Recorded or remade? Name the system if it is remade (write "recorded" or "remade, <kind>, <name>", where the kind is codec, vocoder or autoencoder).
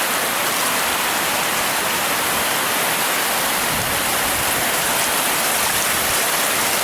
remade, vocoder, BigVGAN v2